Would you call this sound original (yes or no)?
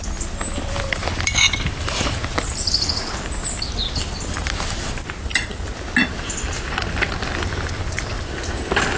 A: yes